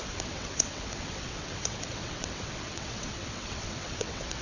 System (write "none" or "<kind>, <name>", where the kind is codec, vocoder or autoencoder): vocoder, WaveNeXt